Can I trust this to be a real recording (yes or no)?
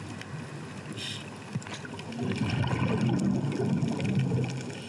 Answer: yes